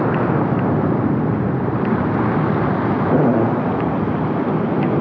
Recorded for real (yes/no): yes